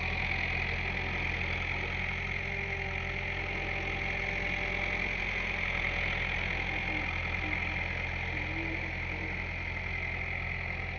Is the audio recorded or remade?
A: recorded